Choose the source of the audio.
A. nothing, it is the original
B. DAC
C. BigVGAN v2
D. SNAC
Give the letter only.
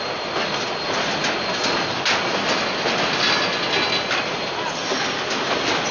A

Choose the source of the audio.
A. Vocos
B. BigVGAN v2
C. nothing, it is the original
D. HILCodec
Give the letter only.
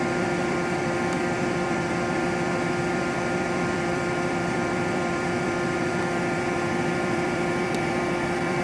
B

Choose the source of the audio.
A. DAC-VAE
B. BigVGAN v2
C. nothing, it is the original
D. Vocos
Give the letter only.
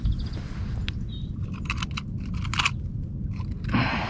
C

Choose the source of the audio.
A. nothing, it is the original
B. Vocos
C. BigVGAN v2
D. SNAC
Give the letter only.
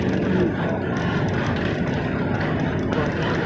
A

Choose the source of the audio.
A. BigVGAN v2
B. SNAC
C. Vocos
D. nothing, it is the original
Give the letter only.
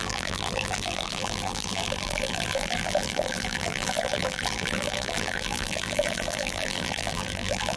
A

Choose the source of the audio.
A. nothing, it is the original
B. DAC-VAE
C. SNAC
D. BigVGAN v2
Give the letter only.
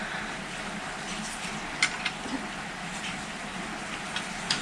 D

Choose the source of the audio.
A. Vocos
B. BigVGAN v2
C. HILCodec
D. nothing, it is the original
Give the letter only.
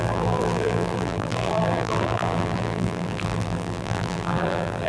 B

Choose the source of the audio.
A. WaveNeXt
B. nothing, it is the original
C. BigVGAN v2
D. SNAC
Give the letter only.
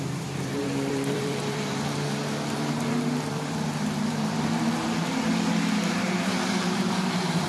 C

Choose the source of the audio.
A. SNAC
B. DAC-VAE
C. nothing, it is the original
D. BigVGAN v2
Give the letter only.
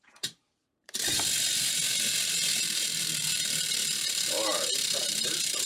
D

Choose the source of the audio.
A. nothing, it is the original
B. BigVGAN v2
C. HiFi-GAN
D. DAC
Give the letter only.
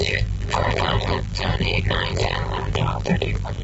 B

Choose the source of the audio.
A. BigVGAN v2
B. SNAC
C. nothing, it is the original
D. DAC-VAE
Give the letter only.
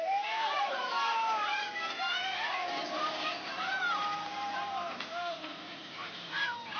C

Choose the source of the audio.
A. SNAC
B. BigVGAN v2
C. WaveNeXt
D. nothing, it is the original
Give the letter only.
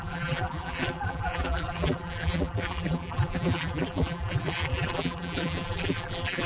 B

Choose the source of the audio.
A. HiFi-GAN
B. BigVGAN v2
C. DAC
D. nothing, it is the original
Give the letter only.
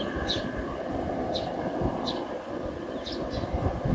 D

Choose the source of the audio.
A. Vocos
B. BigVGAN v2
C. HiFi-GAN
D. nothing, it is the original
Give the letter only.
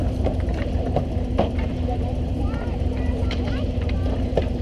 B